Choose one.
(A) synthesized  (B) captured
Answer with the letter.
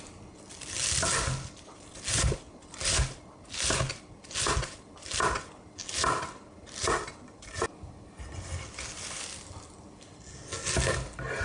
B